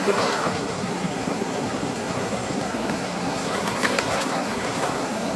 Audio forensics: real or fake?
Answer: fake